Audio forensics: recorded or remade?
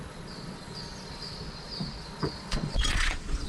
remade